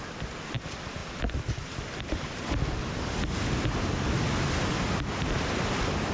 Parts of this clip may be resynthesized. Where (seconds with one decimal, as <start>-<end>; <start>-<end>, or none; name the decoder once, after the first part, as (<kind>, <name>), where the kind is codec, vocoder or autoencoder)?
none

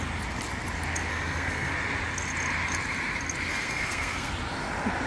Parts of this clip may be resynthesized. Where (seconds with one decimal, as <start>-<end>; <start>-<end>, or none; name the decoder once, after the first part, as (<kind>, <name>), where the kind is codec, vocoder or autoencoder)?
1.1-1.7 (codec, SNAC); 3.5-4.3